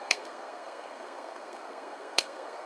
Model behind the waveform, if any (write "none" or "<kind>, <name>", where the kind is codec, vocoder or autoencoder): codec, SNAC